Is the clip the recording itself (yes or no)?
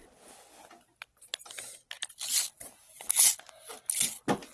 yes